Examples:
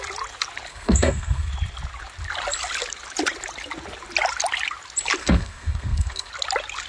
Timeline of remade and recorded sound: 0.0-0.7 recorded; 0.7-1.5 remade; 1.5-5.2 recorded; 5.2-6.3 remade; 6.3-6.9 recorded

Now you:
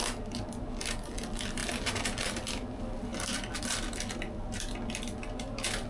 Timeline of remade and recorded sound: 0.0-5.9 recorded

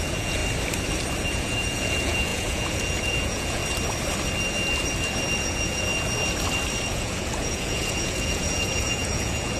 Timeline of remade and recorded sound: 0.0-0.4 remade; 0.4-1.2 recorded; 1.2-3.6 remade; 3.6-5.4 recorded; 5.4-5.9 remade; 5.9-6.9 recorded; 6.9-9.6 remade